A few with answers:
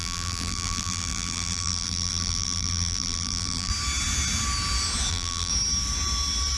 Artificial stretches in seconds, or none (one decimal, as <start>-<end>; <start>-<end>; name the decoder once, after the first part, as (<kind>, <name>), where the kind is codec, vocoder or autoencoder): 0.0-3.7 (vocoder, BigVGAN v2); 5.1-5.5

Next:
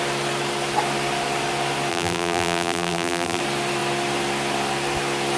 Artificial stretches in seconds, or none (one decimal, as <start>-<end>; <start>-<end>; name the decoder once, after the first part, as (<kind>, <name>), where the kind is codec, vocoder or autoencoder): 1.9-3.4 (vocoder, BigVGAN v2)

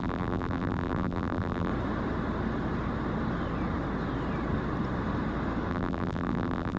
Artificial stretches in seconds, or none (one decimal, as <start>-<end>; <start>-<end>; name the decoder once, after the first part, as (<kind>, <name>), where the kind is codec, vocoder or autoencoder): 0.0-1.7 (vocoder, BigVGAN v2); 5.7-6.8

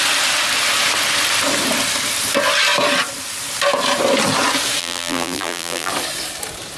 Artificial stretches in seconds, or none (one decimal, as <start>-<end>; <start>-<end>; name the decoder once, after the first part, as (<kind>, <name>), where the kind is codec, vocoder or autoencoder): 4.8-5.9 (vocoder, BigVGAN v2)

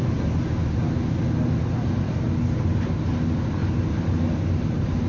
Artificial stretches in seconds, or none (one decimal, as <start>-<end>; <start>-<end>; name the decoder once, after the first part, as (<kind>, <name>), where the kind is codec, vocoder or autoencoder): 3.6-5.1 (vocoder, BigVGAN v2)

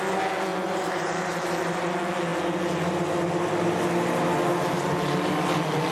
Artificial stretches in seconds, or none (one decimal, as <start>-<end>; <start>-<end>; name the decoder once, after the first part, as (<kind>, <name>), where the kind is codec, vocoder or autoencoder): 0.5-1.9 (vocoder, BigVGAN v2)

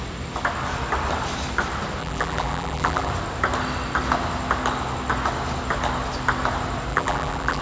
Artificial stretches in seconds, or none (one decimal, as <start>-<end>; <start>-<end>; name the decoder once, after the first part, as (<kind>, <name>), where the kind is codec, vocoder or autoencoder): 2.0-3.1 (vocoder, BigVGAN v2); 6.9-7.6

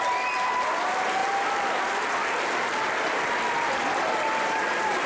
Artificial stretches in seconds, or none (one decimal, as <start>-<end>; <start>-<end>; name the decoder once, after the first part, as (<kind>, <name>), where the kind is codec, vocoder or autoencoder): 0.0-1.2 (vocoder, BigVGAN v2); 3.8-5.1